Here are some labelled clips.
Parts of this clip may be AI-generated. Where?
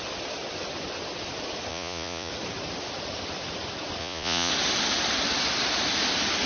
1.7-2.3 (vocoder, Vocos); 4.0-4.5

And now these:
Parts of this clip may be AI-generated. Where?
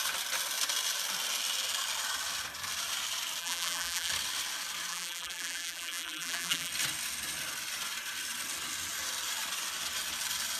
3.4-4.1 (vocoder, BigVGAN v2); 4.9-6.7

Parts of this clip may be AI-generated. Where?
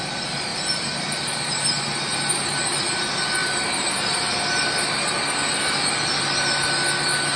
none